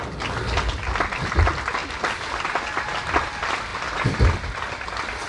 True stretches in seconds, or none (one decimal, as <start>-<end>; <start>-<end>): 0.0-5.3